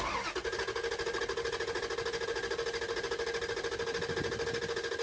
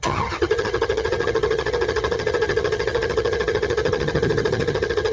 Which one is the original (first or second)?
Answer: first